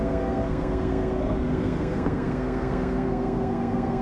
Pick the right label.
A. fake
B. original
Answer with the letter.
A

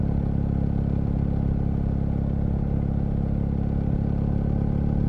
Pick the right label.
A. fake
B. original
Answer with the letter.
B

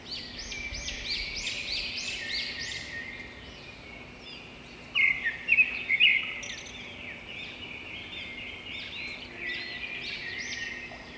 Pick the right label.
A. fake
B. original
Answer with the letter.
B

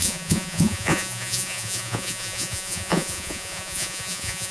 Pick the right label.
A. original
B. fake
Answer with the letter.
B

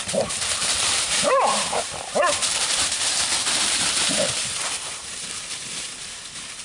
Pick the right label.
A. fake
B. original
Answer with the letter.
A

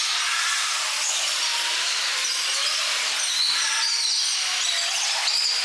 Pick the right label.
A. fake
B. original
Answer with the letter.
B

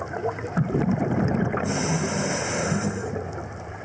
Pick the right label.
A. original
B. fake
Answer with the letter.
A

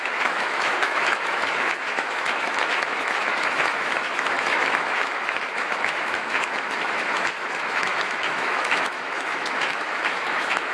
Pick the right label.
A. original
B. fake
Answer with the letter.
B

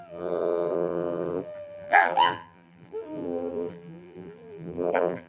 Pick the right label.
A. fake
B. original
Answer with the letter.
A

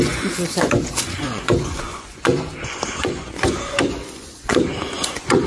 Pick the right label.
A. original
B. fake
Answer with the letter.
B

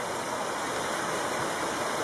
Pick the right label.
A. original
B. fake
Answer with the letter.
A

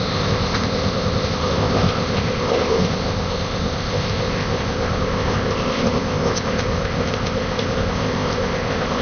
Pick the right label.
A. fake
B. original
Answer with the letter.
A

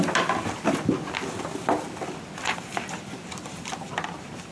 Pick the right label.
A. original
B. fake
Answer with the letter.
A